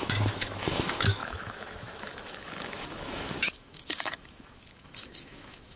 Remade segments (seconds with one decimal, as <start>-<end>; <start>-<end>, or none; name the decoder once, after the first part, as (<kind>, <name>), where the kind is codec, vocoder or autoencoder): 0.0-5.8 (autoencoder, DAC-VAE)